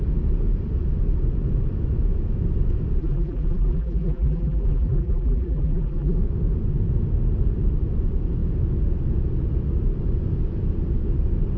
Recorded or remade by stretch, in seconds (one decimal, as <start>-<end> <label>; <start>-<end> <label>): 0.0-3.0 recorded; 3.0-6.2 remade; 6.2-11.6 recorded